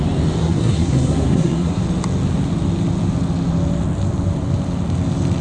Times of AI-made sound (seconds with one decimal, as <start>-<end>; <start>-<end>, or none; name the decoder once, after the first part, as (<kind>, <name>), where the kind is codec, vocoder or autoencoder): 0.4-1.8 (codec, SNAC)

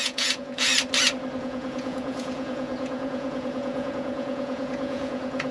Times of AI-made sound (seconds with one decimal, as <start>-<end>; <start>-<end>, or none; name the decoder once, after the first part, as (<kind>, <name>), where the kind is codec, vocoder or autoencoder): 0.0-0.7 (vocoder, Vocos); 1.4-5.5

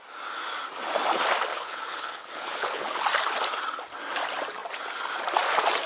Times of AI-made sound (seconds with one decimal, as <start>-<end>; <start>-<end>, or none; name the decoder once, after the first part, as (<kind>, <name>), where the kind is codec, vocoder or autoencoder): 1.5-3.0 (codec, HILCodec)

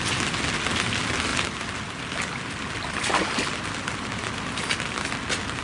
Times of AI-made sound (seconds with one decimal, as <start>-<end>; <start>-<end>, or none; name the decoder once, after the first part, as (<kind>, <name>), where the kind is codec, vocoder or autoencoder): 1.3-2.6 (vocoder, BigVGAN v2)

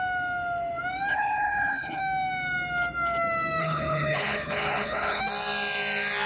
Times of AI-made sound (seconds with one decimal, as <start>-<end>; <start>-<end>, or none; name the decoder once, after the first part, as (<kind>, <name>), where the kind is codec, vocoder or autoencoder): 1.1-2.0 (codec, HILCodec); 3.6-5.2